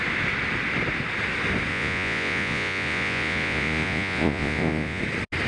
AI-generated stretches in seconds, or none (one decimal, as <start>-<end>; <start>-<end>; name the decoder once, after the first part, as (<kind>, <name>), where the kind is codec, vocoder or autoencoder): 1.7-5.0 (vocoder, Vocos)